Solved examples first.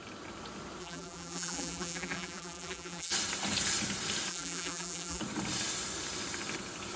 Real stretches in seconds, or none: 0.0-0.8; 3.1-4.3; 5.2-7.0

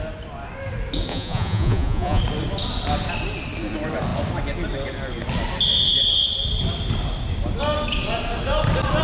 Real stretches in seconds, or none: 0.0-1.1; 2.2-9.0

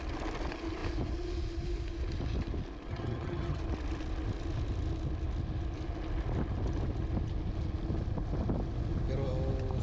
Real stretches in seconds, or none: 0.0-2.9; 3.6-9.8

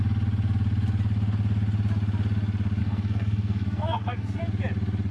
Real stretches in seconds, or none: 0.0-2.8; 4.4-5.1

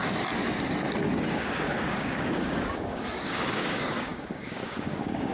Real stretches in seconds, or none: 0.0-1.3

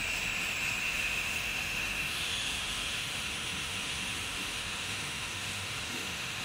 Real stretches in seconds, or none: 0.0-0.8